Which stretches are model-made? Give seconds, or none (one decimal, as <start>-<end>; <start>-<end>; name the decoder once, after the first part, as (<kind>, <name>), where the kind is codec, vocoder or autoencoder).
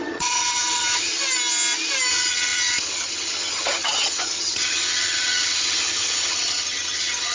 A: 0.0-1.1 (vocoder, HiFi-GAN); 2.1-7.3